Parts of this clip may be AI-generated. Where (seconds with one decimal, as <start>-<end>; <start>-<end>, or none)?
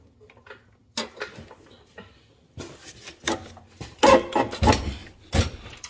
5.0-5.9